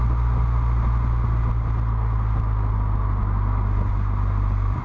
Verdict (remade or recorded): recorded